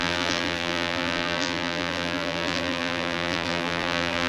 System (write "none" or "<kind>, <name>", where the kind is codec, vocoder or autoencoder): vocoder, BigVGAN v2